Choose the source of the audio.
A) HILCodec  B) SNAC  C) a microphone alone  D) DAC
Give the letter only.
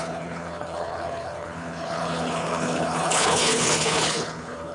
A